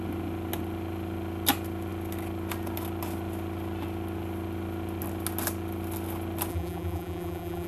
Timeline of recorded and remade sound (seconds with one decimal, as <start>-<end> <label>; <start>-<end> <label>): 0.0-6.5 recorded; 6.5-7.7 remade